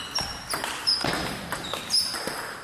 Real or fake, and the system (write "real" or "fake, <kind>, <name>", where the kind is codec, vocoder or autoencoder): real